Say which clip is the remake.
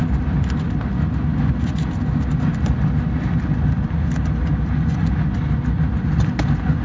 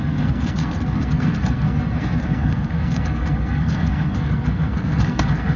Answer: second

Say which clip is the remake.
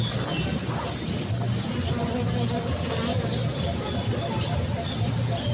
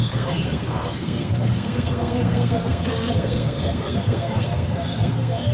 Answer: second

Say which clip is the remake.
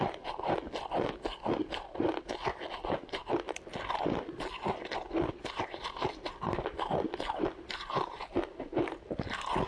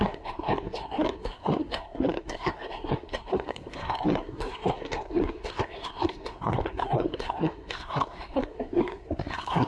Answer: second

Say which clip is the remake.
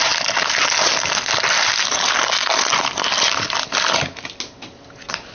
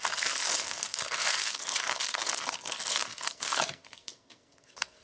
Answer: second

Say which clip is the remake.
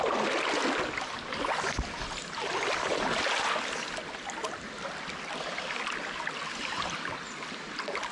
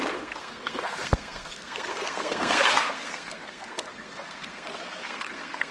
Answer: second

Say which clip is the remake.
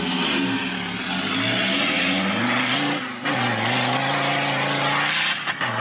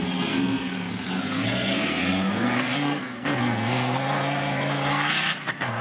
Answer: second